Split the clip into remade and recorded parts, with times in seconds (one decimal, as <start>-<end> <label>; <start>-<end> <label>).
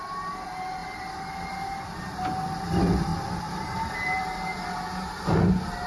0.0-5.9 recorded